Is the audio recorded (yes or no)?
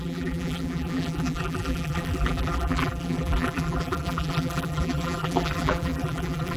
no